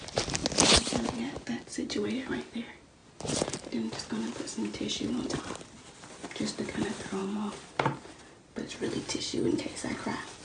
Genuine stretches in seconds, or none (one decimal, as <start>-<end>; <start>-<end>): 0.0-10.4